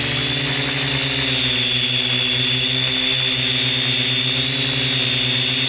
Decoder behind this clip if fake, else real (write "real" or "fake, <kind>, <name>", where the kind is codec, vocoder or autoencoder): real